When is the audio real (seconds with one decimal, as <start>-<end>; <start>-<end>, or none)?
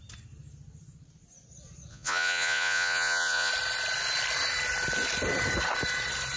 0.0-1.9; 3.5-6.4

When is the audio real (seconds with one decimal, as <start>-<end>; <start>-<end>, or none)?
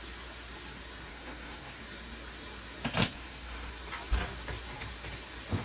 0.0-1.1; 1.8-3.0; 3.7-5.6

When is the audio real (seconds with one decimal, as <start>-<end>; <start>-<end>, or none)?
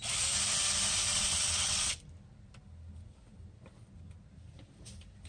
0.0-1.1; 1.9-5.3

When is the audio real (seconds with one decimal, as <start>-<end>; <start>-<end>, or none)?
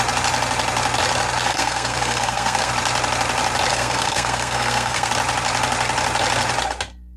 0.0-1.5; 2.7-3.7; 5.1-7.2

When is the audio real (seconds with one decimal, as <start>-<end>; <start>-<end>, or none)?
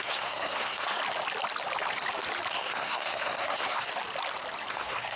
1.0-2.5; 3.9-4.7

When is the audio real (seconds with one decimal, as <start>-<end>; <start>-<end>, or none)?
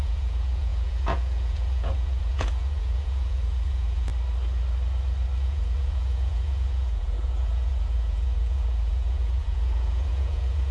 4.1-5.4